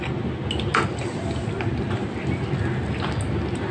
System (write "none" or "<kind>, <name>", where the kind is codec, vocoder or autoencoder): none